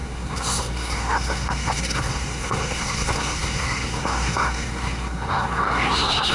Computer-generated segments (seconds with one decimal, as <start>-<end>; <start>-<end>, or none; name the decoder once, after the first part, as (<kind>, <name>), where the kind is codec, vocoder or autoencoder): 0.0-6.3 (codec, SNAC)